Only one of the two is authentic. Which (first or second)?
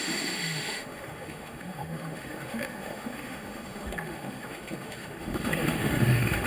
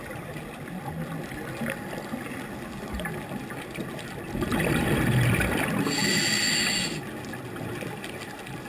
second